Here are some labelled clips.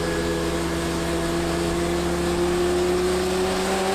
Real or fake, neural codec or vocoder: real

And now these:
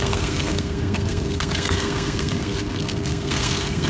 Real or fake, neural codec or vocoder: fake, codec, SNAC